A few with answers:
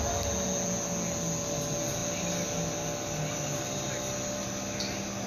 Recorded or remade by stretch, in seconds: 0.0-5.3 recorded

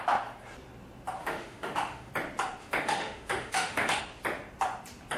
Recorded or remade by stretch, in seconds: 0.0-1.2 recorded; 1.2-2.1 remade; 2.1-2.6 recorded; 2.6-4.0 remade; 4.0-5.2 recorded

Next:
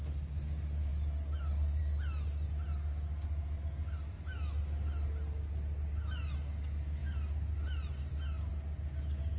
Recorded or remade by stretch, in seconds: 0.0-9.4 recorded